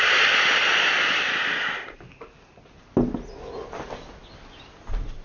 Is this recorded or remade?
recorded